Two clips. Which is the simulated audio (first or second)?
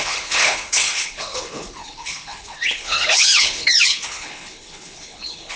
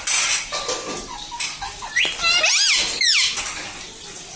first